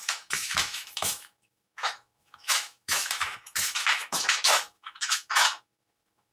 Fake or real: fake